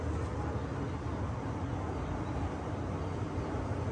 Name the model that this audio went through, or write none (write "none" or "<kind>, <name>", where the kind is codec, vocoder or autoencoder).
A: none